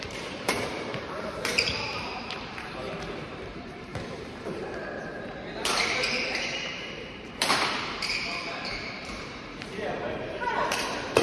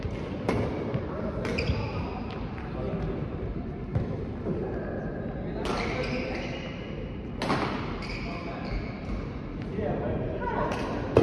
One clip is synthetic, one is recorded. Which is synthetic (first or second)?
first